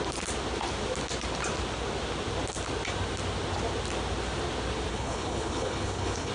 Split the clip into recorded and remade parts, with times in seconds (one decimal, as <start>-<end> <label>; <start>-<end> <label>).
0.0-4.9 recorded; 4.9-6.3 remade